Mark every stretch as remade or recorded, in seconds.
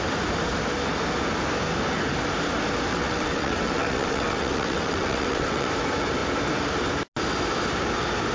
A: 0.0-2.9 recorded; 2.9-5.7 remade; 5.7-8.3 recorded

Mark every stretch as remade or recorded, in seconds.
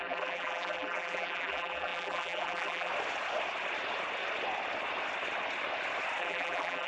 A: 0.0-2.9 remade; 2.9-6.2 recorded; 6.2-6.9 remade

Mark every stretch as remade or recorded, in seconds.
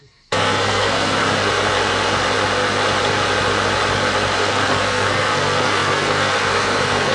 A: 0.0-1.2 remade; 1.2-4.4 recorded; 4.4-7.1 remade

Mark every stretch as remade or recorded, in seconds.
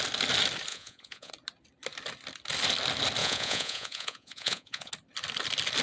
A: 0.0-0.7 recorded; 0.7-1.3 remade; 1.3-3.2 recorded; 3.2-4.9 remade; 4.9-5.8 recorded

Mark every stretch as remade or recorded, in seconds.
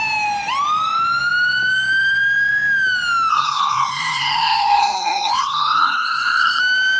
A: 0.0-3.3 recorded; 3.3-6.6 remade; 6.6-7.0 recorded